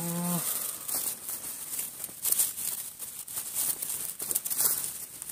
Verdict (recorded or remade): recorded